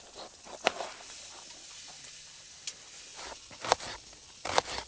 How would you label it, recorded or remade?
recorded